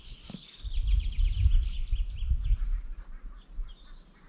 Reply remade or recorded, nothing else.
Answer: recorded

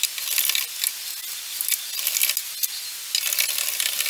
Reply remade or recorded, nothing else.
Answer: recorded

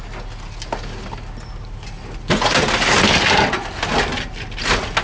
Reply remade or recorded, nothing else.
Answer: recorded